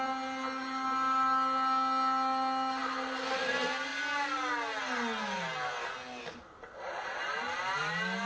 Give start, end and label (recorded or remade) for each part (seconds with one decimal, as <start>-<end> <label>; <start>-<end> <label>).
0.0-8.3 recorded